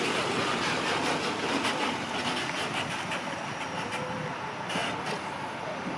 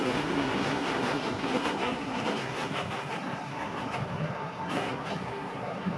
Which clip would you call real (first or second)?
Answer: first